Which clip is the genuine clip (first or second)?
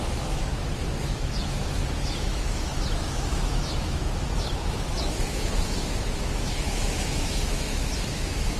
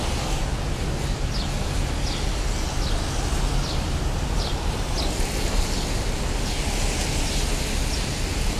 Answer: second